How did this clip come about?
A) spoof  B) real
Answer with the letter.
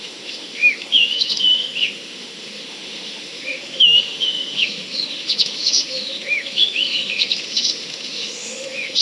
A